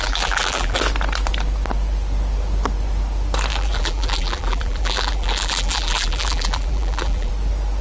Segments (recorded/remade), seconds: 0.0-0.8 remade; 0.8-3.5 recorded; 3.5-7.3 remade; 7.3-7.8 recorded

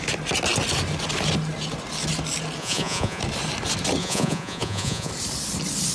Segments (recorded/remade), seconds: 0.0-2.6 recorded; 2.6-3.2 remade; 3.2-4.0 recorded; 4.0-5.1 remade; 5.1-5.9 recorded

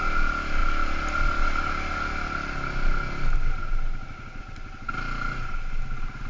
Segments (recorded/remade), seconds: 0.0-6.3 recorded